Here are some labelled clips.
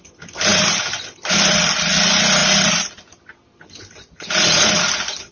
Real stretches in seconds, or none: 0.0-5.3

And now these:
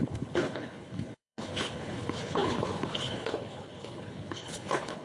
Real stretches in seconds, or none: none

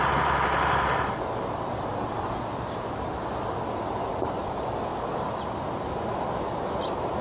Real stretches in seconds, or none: 0.0-7.2

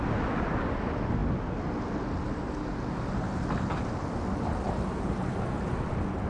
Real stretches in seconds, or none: 0.0-6.3

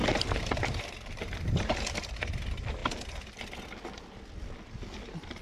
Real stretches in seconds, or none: 2.2-5.4

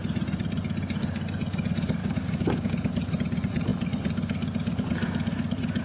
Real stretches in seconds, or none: 0.0-2.0; 2.7-5.8

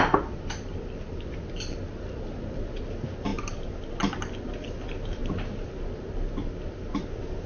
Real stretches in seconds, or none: 0.0-7.5